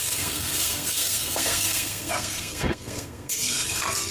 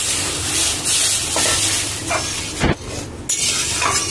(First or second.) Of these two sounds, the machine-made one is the first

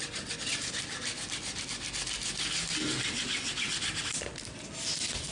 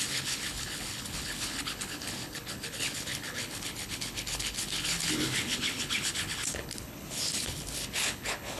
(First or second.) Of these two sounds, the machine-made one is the second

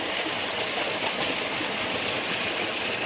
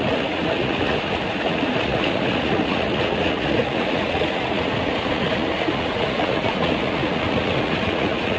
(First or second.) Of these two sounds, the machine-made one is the second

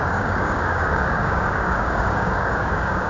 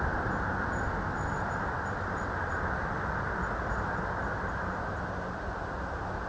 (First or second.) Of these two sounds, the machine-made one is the first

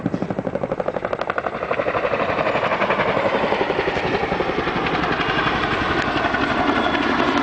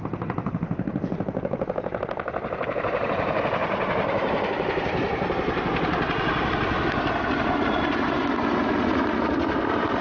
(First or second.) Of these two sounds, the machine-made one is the second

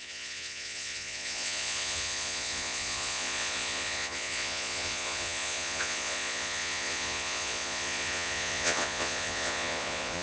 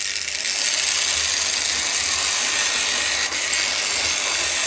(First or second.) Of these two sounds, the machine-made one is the first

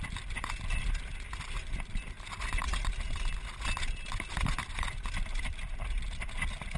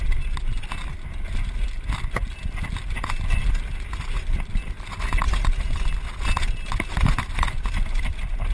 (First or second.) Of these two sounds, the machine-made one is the first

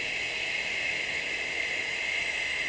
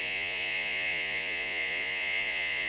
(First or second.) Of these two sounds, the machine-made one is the second